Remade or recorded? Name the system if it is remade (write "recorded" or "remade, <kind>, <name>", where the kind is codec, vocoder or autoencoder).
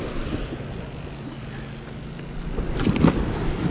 recorded